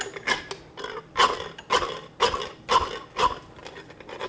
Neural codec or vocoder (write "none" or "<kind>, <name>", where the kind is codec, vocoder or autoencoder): none